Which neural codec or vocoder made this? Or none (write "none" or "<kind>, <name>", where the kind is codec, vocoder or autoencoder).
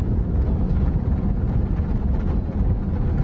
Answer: vocoder, Vocos